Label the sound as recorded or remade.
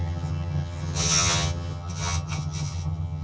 remade